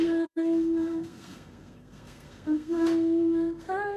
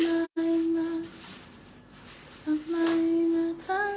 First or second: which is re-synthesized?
first